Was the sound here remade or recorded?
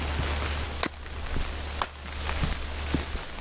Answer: recorded